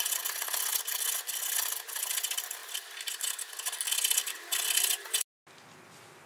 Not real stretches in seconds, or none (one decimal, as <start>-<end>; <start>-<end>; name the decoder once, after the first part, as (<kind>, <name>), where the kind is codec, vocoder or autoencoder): none